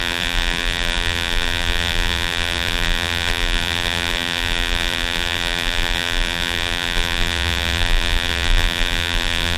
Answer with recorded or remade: remade